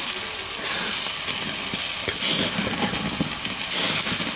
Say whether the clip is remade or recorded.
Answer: recorded